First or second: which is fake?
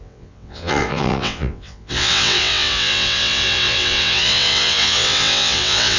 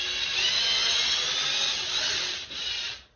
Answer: first